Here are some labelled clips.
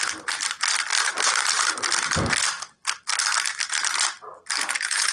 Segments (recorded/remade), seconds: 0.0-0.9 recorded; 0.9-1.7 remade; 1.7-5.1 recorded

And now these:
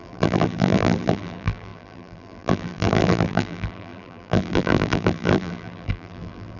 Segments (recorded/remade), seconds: 0.0-6.6 remade

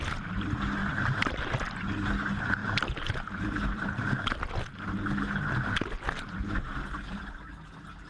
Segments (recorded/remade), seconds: 0.0-0.8 recorded; 0.8-1.5 remade; 1.5-2.6 recorded; 2.6-4.4 remade; 4.4-8.1 recorded

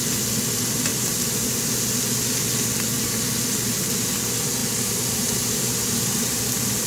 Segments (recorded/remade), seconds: 0.0-0.9 recorded; 0.9-1.8 remade; 1.8-4.6 recorded; 4.6-6.4 remade; 6.4-6.9 recorded